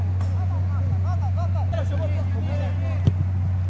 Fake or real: real